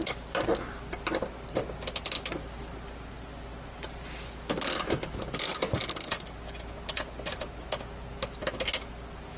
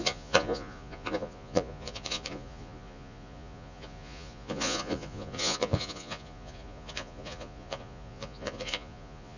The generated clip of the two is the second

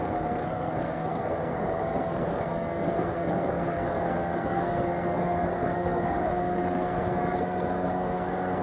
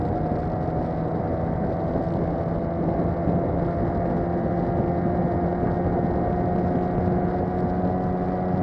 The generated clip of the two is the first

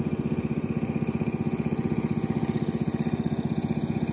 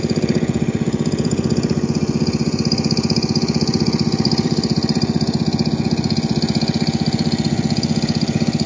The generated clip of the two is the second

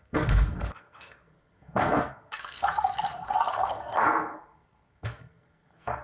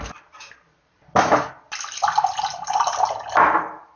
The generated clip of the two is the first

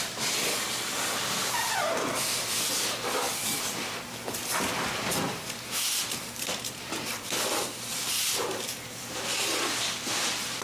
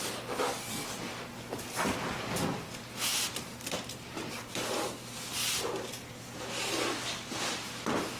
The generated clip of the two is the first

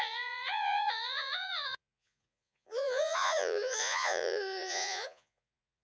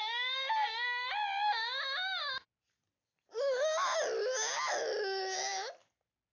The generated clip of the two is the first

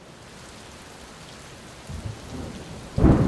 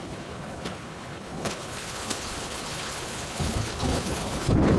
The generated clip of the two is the second